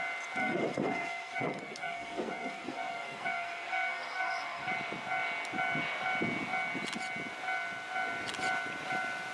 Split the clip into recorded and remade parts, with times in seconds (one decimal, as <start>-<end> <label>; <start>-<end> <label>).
0.0-0.4 recorded; 0.4-4.7 remade; 4.7-9.3 recorded